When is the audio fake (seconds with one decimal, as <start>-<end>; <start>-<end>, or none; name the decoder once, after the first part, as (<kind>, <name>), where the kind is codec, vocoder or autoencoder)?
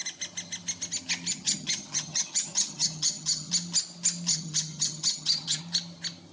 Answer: 1.3-3.5 (vocoder, HiFi-GAN); 4.3-5.6